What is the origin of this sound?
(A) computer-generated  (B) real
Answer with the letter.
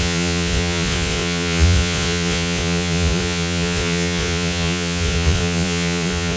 A